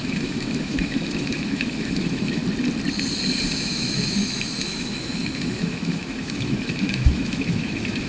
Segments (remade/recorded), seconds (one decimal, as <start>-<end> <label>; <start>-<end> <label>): 0.0-2.4 remade; 2.4-3.5 recorded; 3.5-8.1 remade